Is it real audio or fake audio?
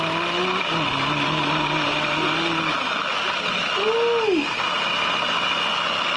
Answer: real